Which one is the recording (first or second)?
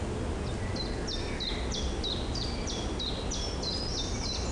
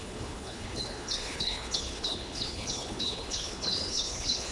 first